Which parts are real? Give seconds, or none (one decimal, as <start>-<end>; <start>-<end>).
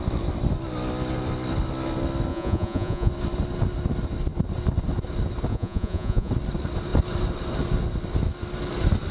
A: 0.0-2.3; 3.1-5.5; 6.3-9.1